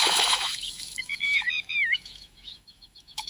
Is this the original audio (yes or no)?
no